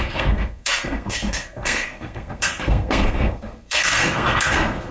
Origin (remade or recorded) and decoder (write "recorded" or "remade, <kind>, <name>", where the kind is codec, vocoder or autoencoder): remade, codec, SNAC